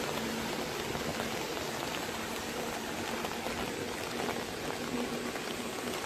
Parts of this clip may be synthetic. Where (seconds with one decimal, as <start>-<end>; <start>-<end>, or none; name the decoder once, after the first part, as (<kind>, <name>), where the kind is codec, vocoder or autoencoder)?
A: none